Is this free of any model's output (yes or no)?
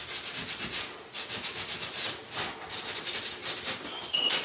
yes